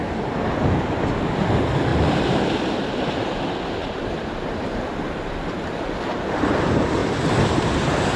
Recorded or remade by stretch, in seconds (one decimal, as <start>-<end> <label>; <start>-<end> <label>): 0.0-1.9 recorded; 1.9-2.4 remade; 2.4-3.8 recorded; 3.8-5.8 remade; 5.8-7.0 recorded; 7.0-8.2 remade